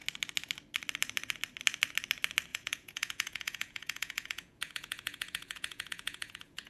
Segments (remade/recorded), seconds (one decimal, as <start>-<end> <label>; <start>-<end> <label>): 0.0-2.5 recorded; 2.5-6.7 remade